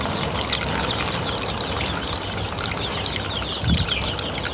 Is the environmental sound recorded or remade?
recorded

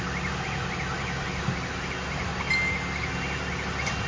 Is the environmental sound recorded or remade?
recorded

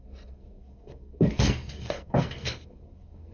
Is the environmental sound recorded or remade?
remade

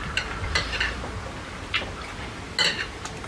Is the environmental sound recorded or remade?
recorded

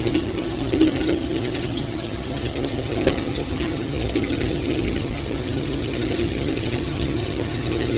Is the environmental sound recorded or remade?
remade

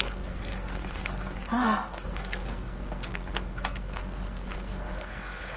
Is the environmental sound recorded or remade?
remade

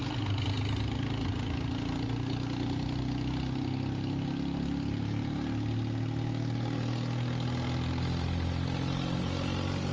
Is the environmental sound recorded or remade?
recorded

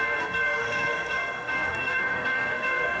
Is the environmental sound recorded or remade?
remade